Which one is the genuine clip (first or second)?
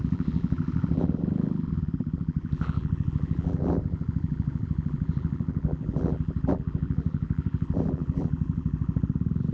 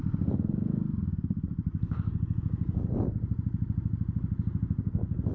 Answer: second